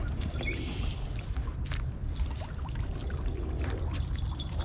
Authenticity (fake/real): real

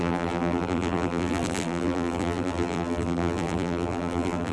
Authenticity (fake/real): fake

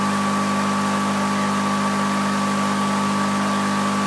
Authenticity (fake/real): real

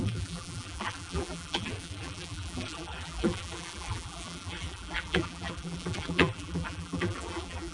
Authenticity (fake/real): fake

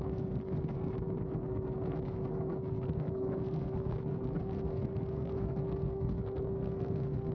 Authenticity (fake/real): fake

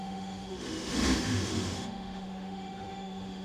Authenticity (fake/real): fake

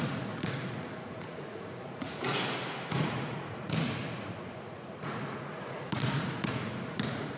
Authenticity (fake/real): fake